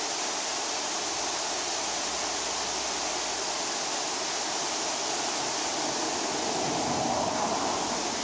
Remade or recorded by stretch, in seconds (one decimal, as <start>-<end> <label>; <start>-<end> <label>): 0.0-8.2 recorded